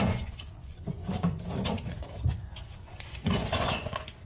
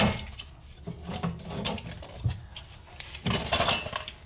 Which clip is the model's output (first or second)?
first